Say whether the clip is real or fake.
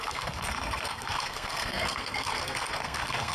fake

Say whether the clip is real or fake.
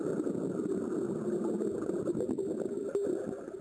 real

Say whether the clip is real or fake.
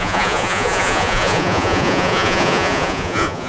fake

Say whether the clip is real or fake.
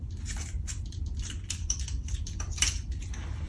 fake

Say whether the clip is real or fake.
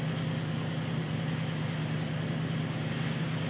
real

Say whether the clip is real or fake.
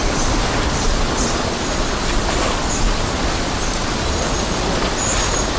real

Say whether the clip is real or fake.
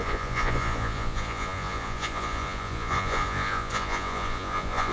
fake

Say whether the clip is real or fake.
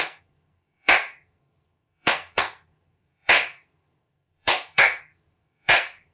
fake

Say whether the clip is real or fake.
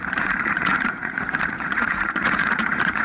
fake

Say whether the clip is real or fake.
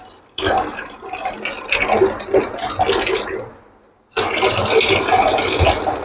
real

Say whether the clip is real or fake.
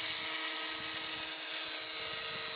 real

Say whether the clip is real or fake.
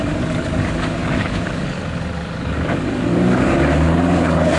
fake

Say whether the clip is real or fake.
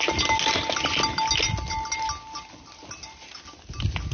real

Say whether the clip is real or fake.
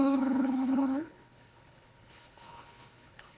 fake